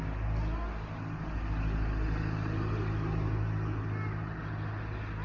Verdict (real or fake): real